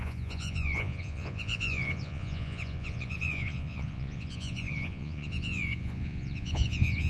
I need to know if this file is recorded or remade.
remade